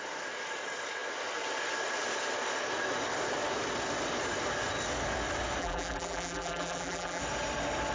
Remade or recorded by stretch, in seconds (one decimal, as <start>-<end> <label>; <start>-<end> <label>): 0.0-5.6 recorded; 5.6-7.2 remade; 7.2-7.9 recorded